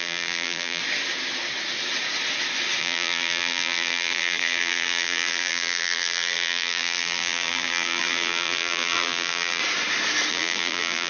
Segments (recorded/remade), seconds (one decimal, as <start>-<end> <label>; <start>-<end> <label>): 0.0-0.8 remade; 0.8-2.8 recorded; 2.8-9.6 remade; 9.6-10.3 recorded; 10.3-11.1 remade